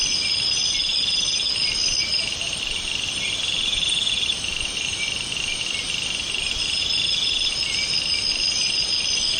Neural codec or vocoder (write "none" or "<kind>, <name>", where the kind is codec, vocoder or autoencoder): vocoder, BigVGAN v2